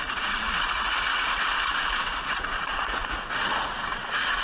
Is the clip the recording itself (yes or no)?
no